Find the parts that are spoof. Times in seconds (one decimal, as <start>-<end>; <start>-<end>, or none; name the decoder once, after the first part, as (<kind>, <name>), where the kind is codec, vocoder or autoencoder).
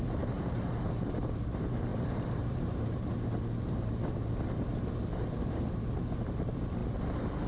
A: 0.0-6.8 (vocoder, BigVGAN v2)